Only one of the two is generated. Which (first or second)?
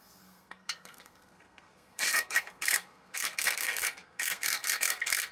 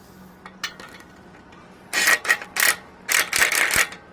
first